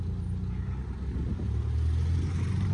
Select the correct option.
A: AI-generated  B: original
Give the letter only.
B